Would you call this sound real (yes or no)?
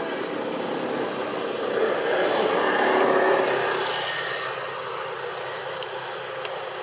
yes